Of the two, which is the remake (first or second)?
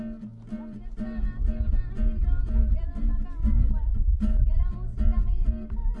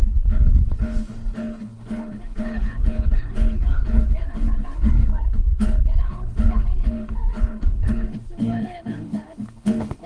second